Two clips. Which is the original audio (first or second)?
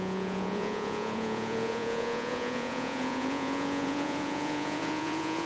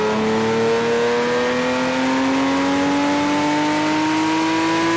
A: second